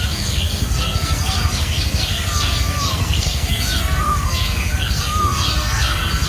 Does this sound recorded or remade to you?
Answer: remade